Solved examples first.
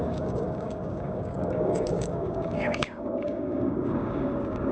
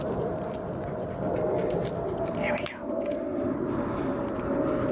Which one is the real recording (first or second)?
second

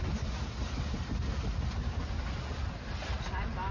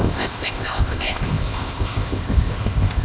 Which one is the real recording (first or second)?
first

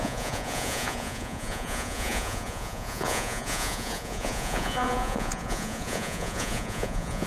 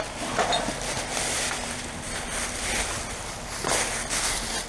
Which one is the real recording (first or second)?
second